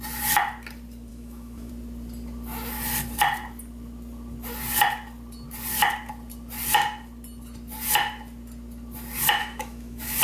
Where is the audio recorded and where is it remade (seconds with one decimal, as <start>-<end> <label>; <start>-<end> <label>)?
0.0-1.1 recorded; 1.1-1.7 remade; 1.7-9.4 recorded; 9.4-10.2 remade